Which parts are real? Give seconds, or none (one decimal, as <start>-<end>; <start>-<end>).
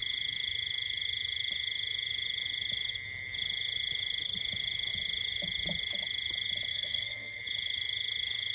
0.0-6.7; 7.4-8.5